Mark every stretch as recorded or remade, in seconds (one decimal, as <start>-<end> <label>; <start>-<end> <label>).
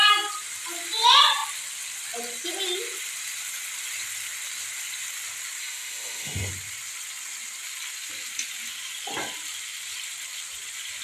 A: 0.0-5.6 recorded; 5.6-6.5 remade; 6.5-11.0 recorded